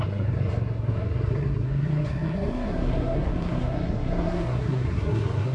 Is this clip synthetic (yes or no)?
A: yes